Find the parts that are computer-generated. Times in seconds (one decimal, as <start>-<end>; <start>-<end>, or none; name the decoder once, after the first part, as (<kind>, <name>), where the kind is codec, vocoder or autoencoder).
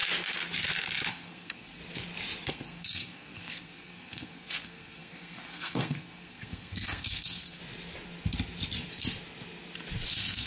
1.1-1.8 (codec, SNAC); 2.5-7.6; 10.1-10.5